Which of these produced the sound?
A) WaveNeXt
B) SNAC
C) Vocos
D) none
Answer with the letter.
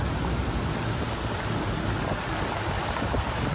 D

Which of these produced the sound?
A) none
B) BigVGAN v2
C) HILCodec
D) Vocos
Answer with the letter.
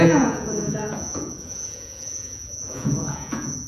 D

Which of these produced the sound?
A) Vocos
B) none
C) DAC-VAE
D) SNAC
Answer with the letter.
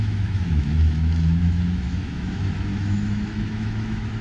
C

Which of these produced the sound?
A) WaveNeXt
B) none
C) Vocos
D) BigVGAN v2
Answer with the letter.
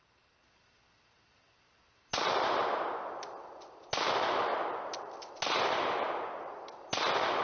B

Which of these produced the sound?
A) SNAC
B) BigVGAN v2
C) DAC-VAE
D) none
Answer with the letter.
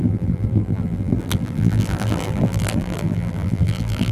B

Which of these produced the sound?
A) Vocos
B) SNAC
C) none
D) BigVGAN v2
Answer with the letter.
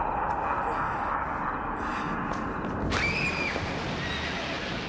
C